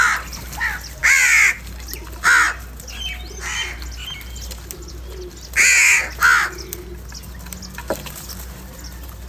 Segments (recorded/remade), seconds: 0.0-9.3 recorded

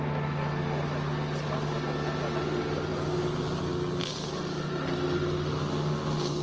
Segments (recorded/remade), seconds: 0.0-6.4 recorded